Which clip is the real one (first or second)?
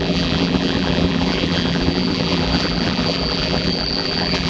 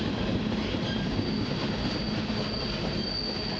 second